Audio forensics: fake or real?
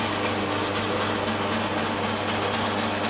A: real